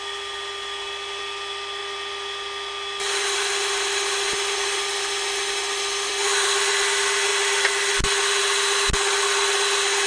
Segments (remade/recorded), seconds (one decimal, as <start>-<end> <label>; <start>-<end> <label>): 0.0-10.1 recorded